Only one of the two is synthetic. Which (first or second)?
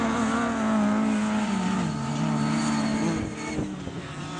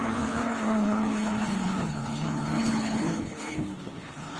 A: second